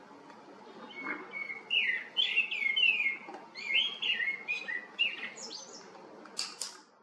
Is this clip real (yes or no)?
yes